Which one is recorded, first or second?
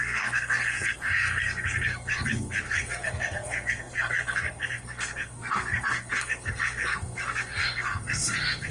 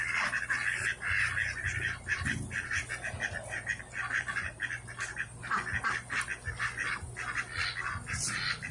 second